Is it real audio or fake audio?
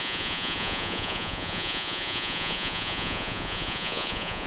fake